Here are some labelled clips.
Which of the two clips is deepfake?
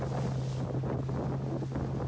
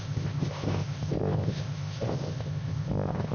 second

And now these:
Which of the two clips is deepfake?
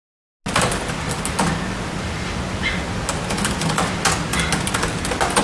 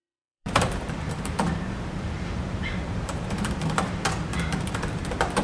second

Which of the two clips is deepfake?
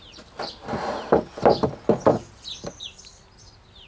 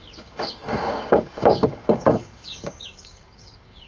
second